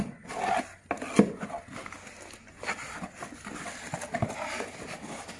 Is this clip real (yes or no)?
yes